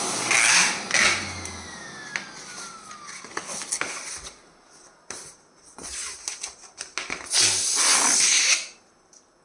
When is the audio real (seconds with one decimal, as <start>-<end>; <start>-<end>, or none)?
0.0-3.3; 3.8-9.4